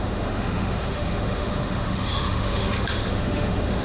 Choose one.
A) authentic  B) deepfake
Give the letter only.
B